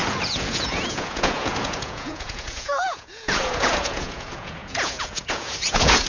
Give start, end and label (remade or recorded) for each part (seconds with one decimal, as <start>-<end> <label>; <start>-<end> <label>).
0.0-6.1 remade